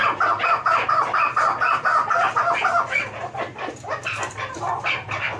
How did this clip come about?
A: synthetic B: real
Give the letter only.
B